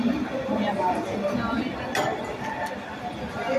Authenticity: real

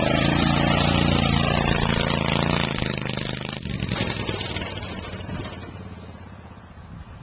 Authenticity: real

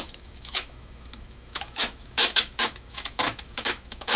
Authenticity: fake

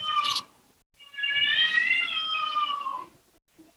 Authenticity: real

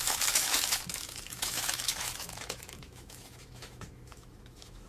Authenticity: fake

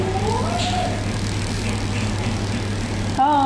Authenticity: real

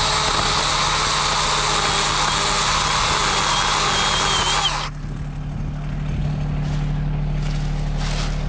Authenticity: real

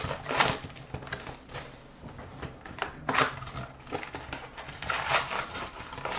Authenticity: real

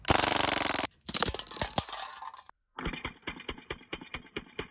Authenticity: real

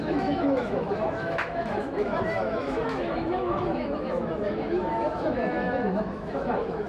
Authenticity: fake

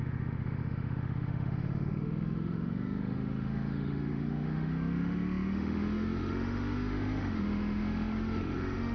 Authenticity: fake